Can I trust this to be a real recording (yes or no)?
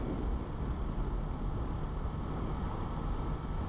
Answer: yes